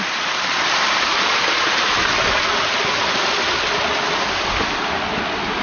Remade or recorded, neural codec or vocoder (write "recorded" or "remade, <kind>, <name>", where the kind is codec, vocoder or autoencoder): recorded